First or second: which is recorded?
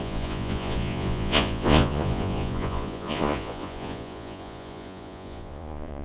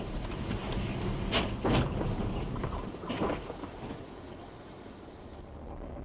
second